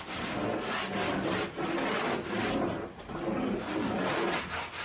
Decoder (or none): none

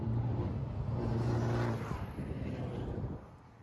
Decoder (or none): none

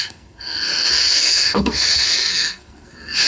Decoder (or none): codec, SNAC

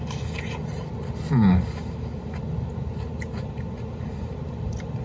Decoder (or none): none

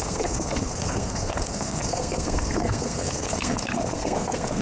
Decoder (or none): codec, SNAC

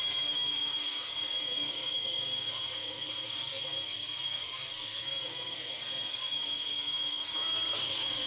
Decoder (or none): codec, SNAC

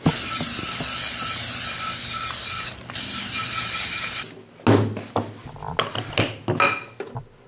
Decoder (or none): none